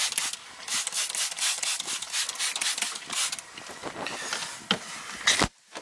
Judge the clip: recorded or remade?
recorded